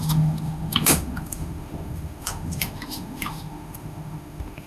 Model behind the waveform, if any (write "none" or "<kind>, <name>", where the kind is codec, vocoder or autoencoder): autoencoder, DAC-VAE